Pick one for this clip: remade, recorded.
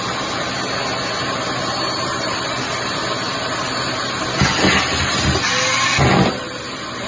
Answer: remade